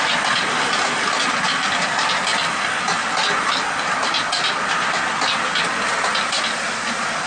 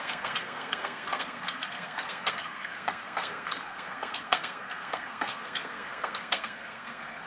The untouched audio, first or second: first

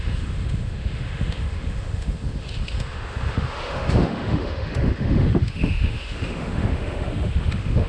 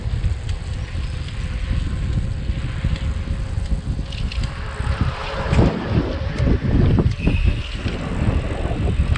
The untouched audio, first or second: second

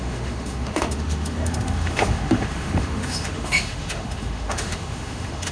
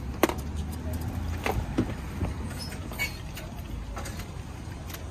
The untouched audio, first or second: second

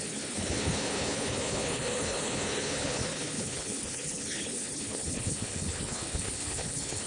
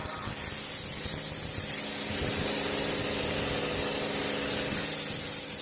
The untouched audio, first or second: second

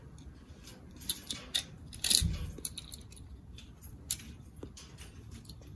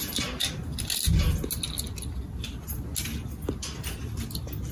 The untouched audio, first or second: second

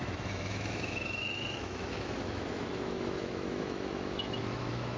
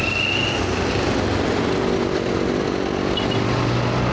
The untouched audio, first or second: second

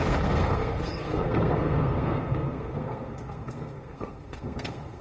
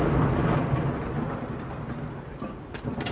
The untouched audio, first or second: second